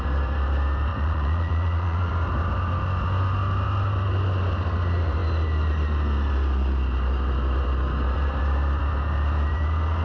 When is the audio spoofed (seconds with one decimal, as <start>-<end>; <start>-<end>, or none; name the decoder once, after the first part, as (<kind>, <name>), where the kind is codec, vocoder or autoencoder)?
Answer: 0.9-2.1 (vocoder, Vocos)